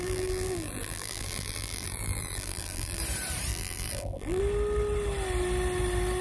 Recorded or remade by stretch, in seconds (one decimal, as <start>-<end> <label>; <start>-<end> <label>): 0.0-3.0 remade; 3.0-3.5 recorded; 3.5-4.4 remade; 4.4-6.2 recorded